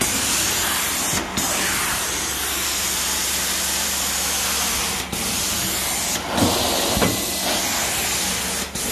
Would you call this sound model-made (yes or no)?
no